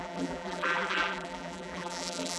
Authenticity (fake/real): fake